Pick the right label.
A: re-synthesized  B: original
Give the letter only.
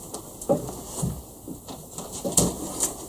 B